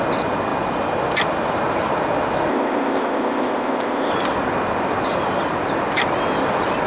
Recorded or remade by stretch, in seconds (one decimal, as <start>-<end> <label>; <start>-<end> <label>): 0.0-2.5 recorded; 2.5-4.1 remade; 4.1-6.9 recorded